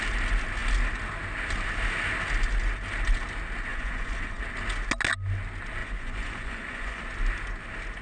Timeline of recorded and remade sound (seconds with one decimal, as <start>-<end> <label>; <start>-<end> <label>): 0.0-3.7 recorded; 3.7-4.4 remade; 4.4-5.8 recorded; 5.8-7.0 remade; 7.0-8.0 recorded